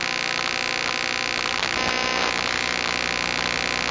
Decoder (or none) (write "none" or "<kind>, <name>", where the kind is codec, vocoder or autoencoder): none